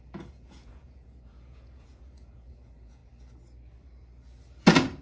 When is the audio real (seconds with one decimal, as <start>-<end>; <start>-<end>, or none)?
3.0-5.0